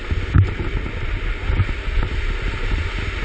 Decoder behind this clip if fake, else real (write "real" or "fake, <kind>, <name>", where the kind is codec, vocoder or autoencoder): real